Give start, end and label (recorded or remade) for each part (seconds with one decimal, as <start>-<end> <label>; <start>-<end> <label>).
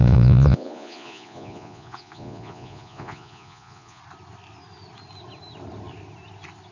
0.0-4.0 remade; 4.0-6.7 recorded